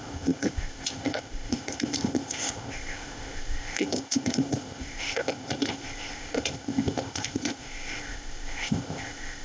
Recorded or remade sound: remade